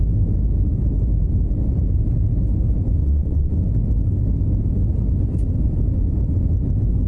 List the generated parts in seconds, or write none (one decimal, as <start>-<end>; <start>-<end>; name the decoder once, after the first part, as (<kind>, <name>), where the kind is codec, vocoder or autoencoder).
3.0-3.5 (vocoder, WaveNeXt)